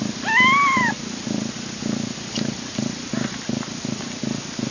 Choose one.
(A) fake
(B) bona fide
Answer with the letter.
B